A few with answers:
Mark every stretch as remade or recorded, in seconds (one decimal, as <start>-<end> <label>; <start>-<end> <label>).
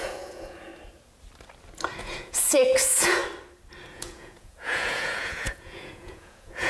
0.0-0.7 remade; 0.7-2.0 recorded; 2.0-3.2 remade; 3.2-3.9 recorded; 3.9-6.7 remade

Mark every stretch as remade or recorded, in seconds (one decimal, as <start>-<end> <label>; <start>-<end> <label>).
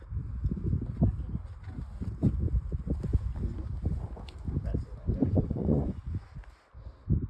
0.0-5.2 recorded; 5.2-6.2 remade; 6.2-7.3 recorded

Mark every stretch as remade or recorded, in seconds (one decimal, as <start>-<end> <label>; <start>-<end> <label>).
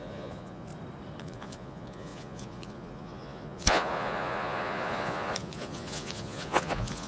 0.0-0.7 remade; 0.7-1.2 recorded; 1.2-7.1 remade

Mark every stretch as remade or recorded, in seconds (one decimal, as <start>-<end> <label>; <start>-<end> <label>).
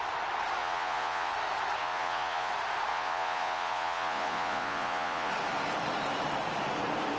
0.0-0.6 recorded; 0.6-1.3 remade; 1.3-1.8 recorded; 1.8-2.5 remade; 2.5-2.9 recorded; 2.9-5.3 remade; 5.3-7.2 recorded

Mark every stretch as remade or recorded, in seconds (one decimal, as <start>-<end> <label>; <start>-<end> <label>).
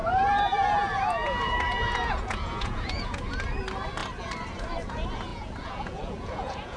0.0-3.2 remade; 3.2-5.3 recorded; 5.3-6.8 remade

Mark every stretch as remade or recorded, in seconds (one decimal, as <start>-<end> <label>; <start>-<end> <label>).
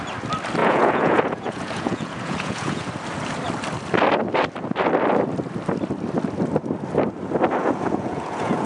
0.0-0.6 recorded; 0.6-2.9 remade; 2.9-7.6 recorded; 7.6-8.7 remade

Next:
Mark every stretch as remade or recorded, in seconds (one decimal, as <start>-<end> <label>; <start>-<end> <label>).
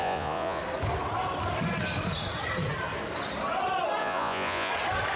0.0-0.6 remade; 0.6-4.0 recorded; 4.0-4.7 remade; 4.7-5.2 recorded